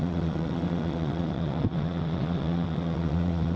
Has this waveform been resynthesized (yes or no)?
yes